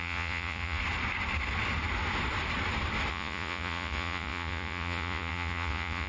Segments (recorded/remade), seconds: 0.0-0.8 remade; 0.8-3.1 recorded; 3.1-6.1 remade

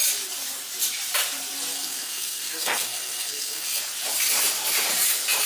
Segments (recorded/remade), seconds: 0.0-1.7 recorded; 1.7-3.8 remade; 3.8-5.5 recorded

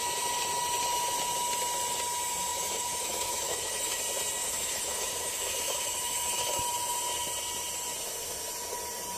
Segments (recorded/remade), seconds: 0.0-2.5 recorded; 2.5-4.0 remade; 4.0-4.4 recorded; 4.4-6.7 remade; 6.7-9.2 recorded

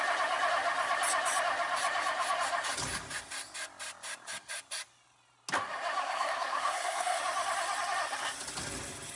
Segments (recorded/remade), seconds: 0.0-6.0 recorded; 6.0-7.2 remade; 7.2-9.2 recorded

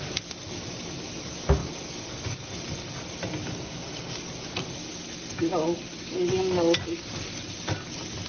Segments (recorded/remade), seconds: 0.0-3.4 recorded; 3.4-4.1 remade; 4.1-8.3 recorded

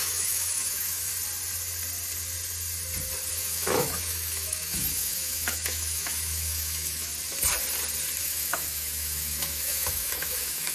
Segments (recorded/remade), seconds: 0.0-1.1 remade; 1.1-3.3 recorded; 3.3-7.1 remade; 7.1-8.2 recorded; 8.2-10.7 remade

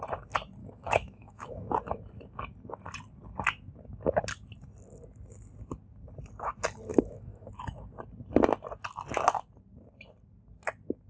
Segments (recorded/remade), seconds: 0.0-0.6 recorded; 0.6-1.7 remade; 1.7-6.9 recorded; 6.9-7.5 remade; 7.5-11.1 recorded

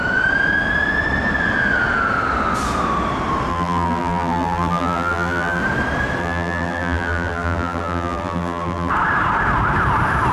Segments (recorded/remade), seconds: 0.0-3.5 recorded; 3.5-5.6 remade; 5.6-6.2 recorded; 6.2-8.9 remade; 8.9-10.3 recorded